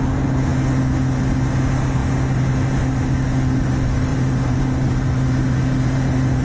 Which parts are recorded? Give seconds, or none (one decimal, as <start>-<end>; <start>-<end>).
0.0-4.1; 4.6-6.4

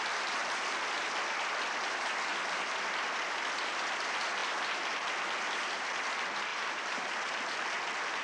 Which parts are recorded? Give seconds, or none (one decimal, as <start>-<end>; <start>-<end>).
0.0-6.5; 7.1-8.2

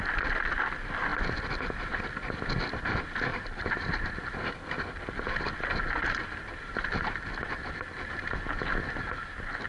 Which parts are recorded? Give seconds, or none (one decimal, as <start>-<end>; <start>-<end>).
0.0-3.3; 4.1-9.7

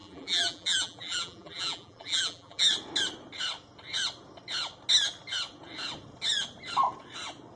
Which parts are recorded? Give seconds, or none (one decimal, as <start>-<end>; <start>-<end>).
2.7-7.6

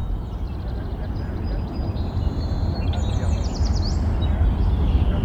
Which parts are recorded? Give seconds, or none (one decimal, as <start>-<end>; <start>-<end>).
3.1-3.5; 4.3-5.2

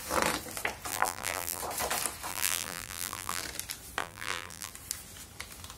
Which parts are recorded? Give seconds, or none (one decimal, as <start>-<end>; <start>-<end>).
0.0-0.9; 1.6-2.3; 3.4-4.0; 4.7-5.8

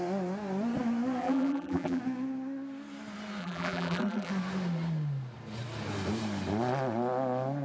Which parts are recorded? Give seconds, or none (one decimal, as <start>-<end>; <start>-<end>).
0.0-1.2; 2.0-3.4; 4.3-7.6